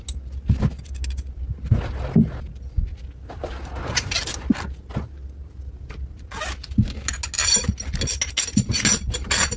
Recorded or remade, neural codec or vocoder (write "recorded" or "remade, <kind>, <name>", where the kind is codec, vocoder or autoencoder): recorded